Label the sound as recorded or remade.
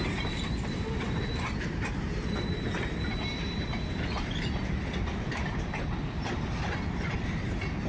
remade